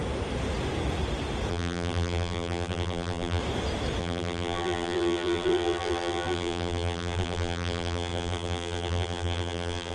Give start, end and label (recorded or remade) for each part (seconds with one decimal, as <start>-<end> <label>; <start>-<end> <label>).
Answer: 0.0-1.5 recorded; 1.5-3.4 remade; 3.4-4.0 recorded; 4.0-9.9 remade

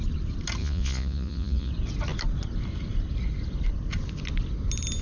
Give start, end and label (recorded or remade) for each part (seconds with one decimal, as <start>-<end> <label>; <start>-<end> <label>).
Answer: 0.0-0.6 recorded; 0.6-1.7 remade; 1.7-5.0 recorded

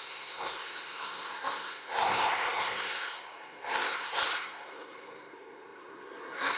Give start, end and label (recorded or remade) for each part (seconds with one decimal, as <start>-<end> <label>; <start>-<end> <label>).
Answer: 0.0-6.6 remade

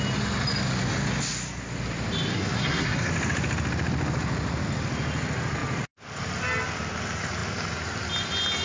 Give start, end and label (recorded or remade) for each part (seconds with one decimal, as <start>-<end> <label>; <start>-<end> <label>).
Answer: 0.0-2.3 recorded; 2.3-3.1 remade; 3.1-8.6 recorded

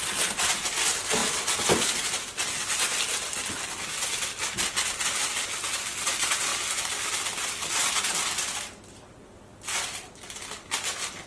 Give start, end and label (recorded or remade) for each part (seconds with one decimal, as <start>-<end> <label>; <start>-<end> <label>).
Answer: 0.0-11.3 recorded